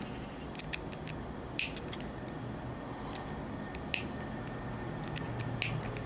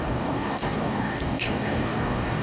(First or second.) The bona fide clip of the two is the first